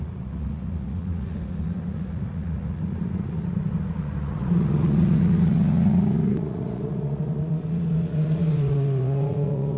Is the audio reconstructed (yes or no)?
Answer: yes